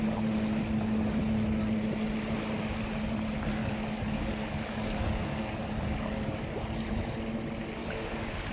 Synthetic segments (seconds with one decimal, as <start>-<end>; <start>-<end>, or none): 3.6-6.4; 7.8-8.5